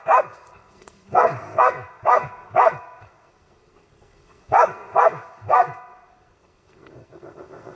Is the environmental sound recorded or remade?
remade